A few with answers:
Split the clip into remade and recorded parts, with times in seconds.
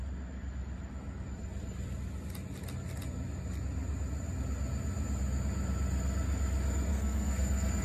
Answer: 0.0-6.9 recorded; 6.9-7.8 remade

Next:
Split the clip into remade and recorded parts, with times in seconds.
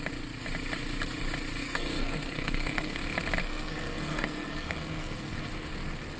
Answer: 0.0-1.6 recorded; 1.6-3.0 remade; 3.0-3.4 recorded; 3.4-5.5 remade; 5.5-6.2 recorded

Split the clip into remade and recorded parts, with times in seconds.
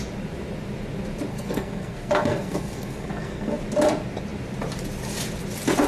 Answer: 0.0-1.3 recorded; 1.3-3.6 remade; 3.6-5.9 recorded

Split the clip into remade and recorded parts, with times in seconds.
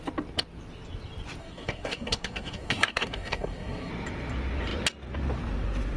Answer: 0.0-1.4 recorded; 1.4-3.9 remade; 3.9-6.0 recorded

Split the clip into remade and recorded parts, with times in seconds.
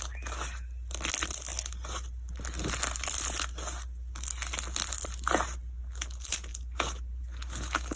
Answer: 0.0-8.0 recorded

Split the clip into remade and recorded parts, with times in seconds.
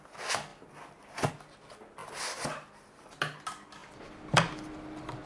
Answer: 0.0-5.3 recorded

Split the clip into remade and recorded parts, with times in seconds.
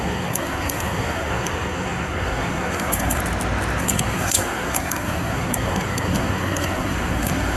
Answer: 0.0-3.2 remade; 3.2-3.8 recorded; 3.8-7.6 remade